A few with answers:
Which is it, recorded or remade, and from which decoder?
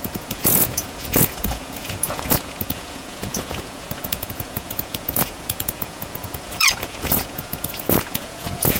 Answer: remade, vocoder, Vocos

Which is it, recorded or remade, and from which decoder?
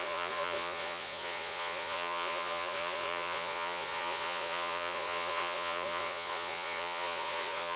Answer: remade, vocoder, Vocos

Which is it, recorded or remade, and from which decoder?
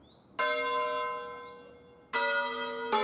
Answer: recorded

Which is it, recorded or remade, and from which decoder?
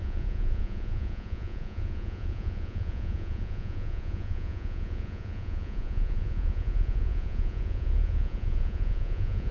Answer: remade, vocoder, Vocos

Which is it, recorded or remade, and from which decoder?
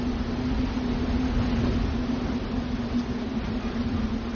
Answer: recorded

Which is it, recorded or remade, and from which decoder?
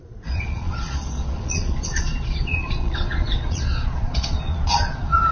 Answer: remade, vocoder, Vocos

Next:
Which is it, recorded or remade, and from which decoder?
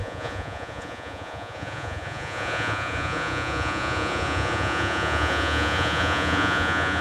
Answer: remade, vocoder, Vocos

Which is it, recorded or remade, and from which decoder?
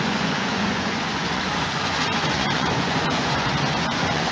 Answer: remade, vocoder, Vocos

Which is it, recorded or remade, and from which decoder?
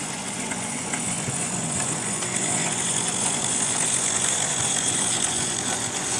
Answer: remade, vocoder, Vocos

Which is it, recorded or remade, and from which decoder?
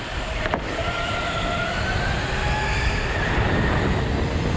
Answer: recorded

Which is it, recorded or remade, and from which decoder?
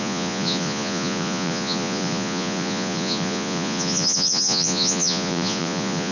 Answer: remade, vocoder, Vocos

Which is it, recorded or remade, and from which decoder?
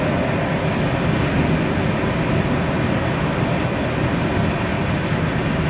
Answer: recorded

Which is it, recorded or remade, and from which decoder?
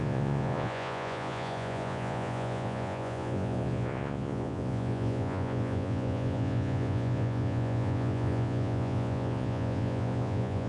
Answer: remade, vocoder, Vocos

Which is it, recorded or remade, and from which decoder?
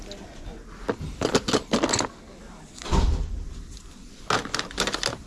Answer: recorded